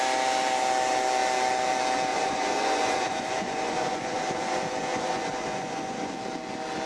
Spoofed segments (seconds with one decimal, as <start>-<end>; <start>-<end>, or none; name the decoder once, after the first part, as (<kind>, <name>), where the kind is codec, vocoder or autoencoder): 2.1-6.2 (vocoder, Vocos)